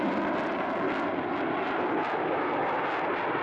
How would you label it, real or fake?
real